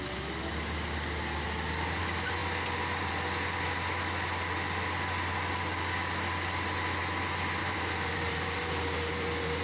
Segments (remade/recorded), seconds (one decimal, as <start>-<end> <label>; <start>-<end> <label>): 0.0-7.6 recorded; 7.6-9.6 remade